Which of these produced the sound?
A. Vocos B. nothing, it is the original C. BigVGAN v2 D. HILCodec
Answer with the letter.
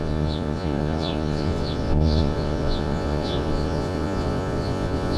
A